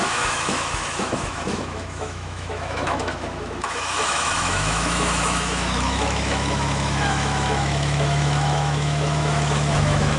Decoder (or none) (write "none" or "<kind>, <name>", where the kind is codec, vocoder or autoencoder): autoencoder, DAC-VAE